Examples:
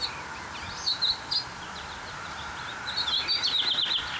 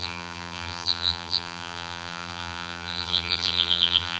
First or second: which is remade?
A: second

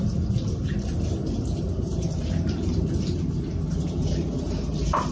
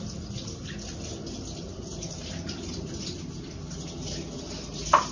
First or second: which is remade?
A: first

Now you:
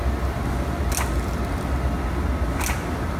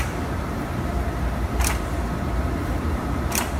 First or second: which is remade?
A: second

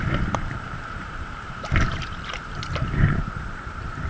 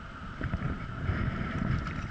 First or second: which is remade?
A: first